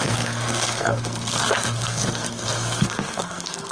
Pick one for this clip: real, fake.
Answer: fake